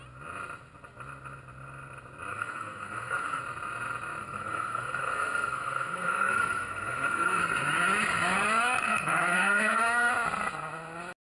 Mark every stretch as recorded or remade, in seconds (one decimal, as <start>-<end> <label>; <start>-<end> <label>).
0.0-2.3 recorded; 2.3-3.4 remade; 3.4-4.2 recorded; 4.2-7.4 remade; 7.4-8.8 recorded; 8.8-10.1 remade; 10.1-11.3 recorded